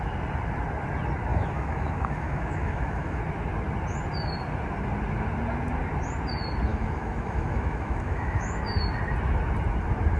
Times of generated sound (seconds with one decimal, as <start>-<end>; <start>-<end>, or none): 1.3-3.2; 6.7-8.6